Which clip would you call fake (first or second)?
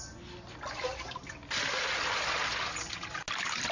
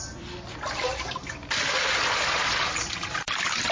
second